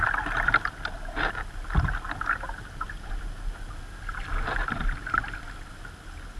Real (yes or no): yes